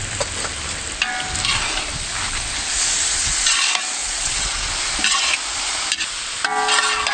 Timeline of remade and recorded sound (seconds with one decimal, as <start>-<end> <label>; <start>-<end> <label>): 0.0-4.0 recorded; 4.0-4.7 remade; 4.7-7.1 recorded